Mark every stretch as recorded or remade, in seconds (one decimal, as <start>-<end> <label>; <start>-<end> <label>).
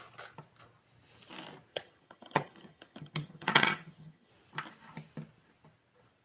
0.0-1.7 recorded; 1.7-4.3 remade; 4.3-6.2 recorded